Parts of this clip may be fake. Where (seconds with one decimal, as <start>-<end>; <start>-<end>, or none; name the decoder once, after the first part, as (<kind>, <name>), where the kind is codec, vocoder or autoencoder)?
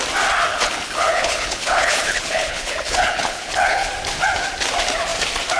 0.5-3.9 (codec, HILCodec)